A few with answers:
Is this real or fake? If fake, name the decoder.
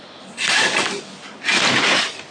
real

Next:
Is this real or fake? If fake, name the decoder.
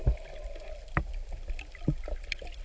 real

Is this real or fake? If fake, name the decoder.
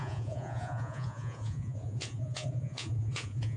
fake, vocoder, Vocos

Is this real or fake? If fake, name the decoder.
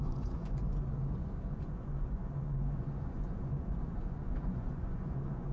fake, vocoder, Vocos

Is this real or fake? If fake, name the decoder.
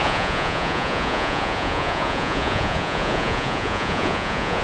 fake, vocoder, Vocos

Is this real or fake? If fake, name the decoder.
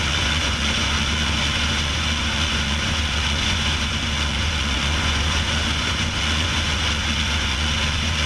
fake, vocoder, Vocos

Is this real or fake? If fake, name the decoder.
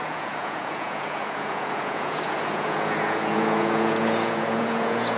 fake, vocoder, Vocos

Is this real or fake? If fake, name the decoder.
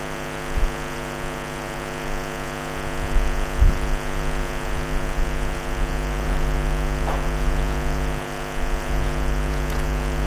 fake, vocoder, Vocos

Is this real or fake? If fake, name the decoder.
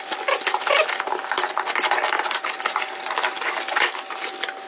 real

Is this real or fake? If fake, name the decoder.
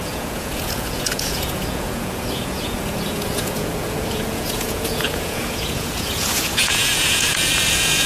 fake, vocoder, Vocos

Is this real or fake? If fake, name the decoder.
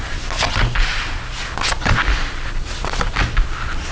real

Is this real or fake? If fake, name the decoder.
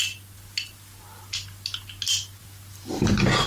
real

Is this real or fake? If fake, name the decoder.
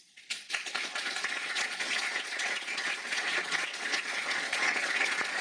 fake, vocoder, Vocos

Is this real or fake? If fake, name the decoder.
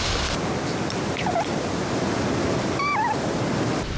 real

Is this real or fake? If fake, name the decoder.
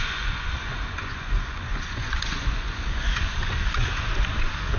fake, vocoder, Vocos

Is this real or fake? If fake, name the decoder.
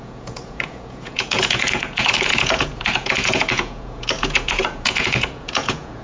fake, vocoder, Vocos